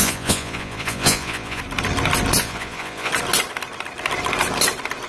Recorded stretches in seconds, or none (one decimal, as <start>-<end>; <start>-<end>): 1.6-2.4; 3.1-5.1

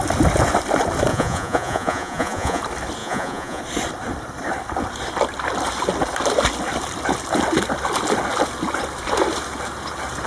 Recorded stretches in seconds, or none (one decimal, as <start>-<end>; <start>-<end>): 0.0-1.1; 2.6-3.0; 3.6-10.3

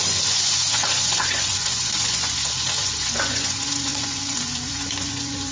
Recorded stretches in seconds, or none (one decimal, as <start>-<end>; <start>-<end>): none

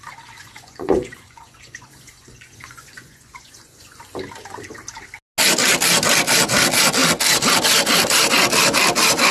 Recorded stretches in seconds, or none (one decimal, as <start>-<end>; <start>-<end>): 0.0-0.4; 4.0-9.3